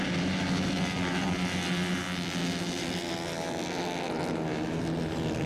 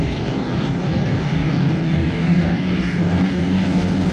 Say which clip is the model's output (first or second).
second